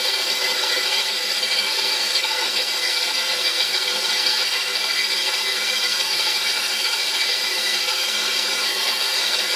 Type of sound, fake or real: fake